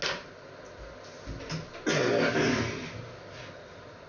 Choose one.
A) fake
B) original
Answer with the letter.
B